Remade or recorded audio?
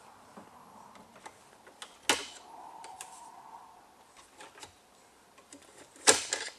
recorded